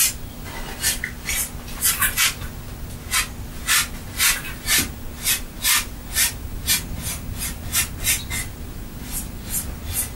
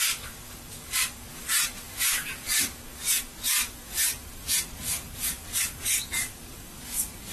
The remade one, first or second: second